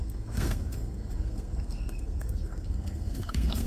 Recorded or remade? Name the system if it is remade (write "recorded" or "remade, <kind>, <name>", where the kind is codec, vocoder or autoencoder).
remade, codec, SNAC